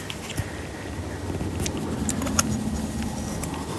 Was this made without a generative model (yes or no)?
yes